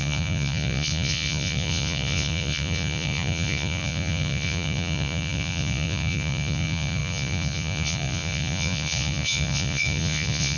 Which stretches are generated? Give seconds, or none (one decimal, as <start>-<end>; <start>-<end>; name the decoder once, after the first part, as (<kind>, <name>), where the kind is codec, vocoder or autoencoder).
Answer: 0.0-10.6 (vocoder, Vocos)